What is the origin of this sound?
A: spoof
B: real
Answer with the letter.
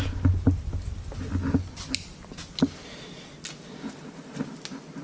B